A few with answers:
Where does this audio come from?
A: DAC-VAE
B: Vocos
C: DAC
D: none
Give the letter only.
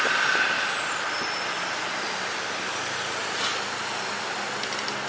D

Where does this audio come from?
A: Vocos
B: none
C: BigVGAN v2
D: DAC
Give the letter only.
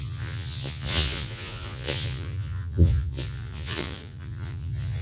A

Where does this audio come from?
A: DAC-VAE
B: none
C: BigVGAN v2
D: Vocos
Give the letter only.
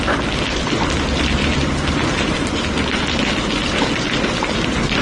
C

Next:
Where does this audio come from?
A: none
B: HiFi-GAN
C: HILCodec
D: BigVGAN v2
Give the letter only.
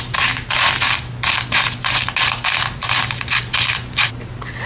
D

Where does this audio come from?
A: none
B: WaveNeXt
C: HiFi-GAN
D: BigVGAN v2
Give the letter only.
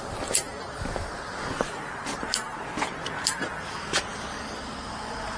A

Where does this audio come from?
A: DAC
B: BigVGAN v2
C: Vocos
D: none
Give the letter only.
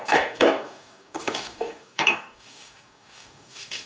A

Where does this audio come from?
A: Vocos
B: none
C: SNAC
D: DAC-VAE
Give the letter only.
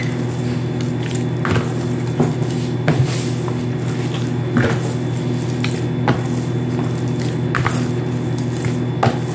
B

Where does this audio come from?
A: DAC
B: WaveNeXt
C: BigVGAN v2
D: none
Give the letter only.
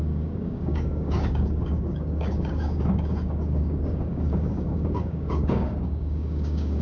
A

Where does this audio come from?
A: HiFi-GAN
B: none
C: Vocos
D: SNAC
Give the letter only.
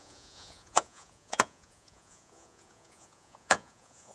C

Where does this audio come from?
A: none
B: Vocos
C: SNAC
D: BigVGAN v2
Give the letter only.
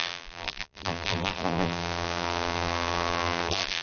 D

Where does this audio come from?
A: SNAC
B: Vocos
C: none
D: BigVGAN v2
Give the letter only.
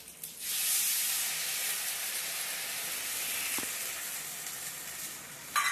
C